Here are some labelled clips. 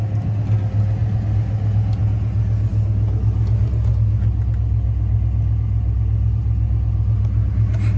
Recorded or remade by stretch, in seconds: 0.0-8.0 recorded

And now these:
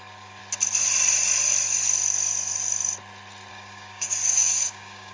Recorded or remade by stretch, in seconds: 0.0-0.4 remade; 0.4-3.5 recorded; 3.5-5.1 remade

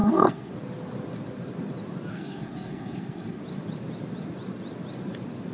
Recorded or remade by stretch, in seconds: 0.0-0.5 remade; 0.5-2.1 recorded; 2.1-3.4 remade; 3.4-5.5 recorded

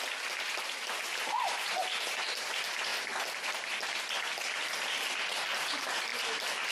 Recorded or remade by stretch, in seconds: 0.0-2.9 recorded; 2.9-5.5 remade; 5.5-6.7 recorded

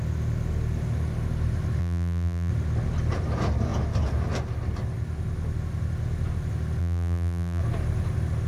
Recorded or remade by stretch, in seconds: 0.0-1.8 recorded; 1.8-2.5 remade; 2.5-6.8 recorded; 6.8-7.6 remade; 7.6-8.5 recorded

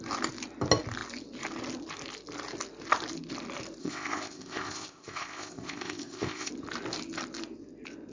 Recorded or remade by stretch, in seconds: 0.0-3.8 recorded; 3.8-6.5 remade; 6.5-8.1 recorded

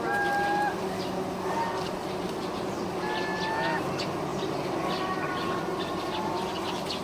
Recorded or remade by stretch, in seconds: 0.0-7.0 recorded